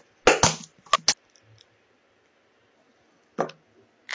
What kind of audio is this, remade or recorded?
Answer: recorded